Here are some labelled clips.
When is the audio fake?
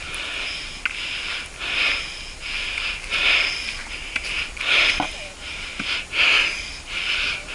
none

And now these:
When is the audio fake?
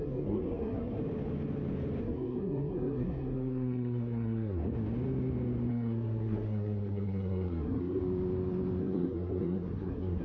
0.0-1.0 (codec, SNAC); 2.0-4.6; 5.7-8.0; 8.8-10.2